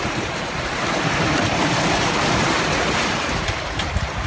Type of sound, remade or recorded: remade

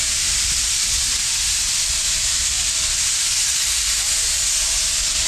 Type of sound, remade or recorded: remade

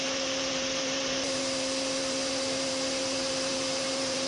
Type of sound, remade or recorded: remade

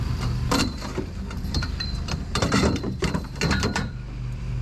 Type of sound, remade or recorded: remade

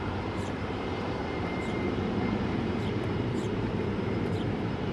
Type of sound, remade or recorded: remade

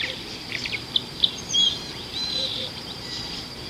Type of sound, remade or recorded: remade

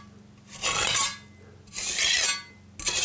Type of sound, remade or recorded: recorded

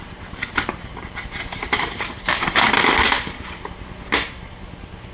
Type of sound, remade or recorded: remade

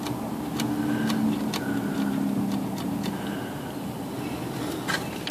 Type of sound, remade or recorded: recorded